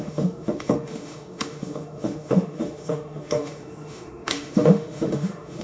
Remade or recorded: remade